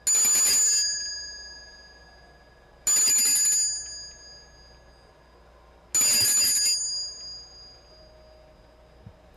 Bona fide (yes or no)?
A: yes